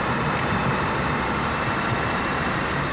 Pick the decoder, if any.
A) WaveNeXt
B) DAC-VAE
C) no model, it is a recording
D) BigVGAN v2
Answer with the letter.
D